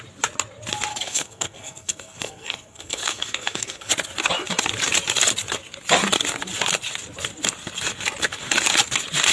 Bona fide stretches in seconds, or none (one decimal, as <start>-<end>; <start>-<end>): 0.0-0.9; 3.9-9.3